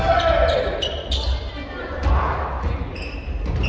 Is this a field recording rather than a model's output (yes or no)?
yes